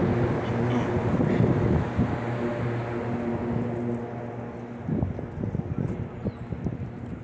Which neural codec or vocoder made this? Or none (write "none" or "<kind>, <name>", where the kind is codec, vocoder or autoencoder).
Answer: none